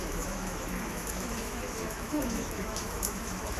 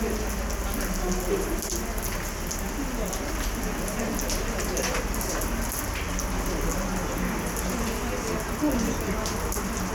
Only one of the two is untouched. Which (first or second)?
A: second